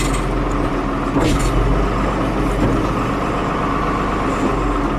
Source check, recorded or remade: recorded